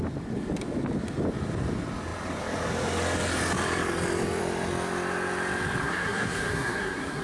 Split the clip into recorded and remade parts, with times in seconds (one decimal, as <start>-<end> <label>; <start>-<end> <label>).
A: 0.0-5.8 recorded; 5.8-7.2 remade